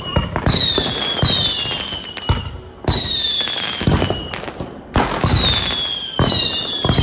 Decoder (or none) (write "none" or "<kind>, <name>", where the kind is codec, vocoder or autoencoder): none